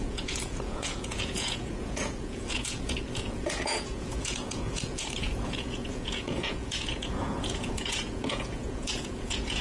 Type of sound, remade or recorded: remade